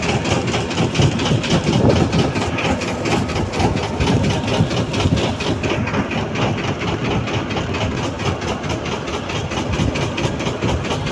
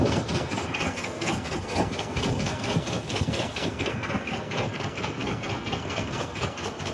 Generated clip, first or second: second